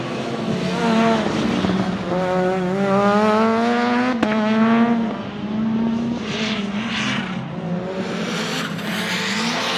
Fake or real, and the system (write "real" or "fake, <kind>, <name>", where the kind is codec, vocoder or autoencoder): real